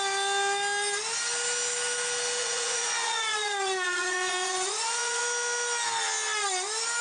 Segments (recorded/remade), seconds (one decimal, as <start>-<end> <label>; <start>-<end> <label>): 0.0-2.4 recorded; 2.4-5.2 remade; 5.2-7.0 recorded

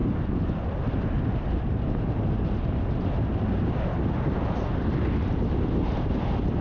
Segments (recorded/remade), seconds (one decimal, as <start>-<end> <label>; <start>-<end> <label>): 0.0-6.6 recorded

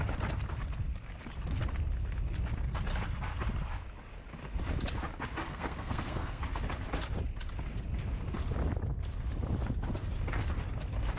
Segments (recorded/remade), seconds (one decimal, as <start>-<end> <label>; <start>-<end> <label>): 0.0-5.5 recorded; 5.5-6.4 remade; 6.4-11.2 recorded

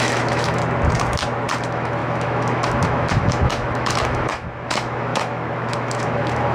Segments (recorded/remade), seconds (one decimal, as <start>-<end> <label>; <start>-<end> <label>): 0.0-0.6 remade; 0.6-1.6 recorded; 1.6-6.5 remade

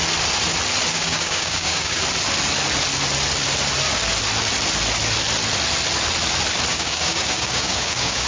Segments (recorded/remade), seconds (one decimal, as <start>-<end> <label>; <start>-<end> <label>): 0.0-0.9 recorded; 0.9-2.0 remade; 2.0-6.7 recorded; 6.7-8.3 remade

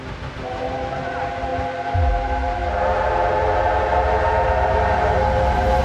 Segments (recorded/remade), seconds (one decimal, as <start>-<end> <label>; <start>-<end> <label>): 0.0-5.8 recorded